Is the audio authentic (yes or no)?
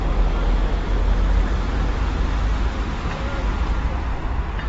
yes